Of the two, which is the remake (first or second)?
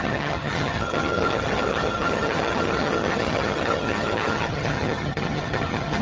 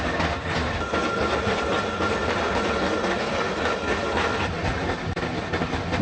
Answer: first